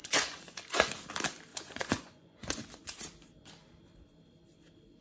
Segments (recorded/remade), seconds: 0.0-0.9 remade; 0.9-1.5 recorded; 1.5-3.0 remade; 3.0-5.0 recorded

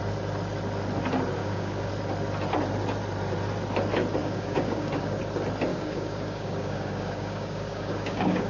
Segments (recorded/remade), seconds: 0.0-1.4 recorded; 1.4-1.9 remade; 1.9-4.2 recorded; 4.2-5.2 remade; 5.2-5.7 recorded; 5.7-8.5 remade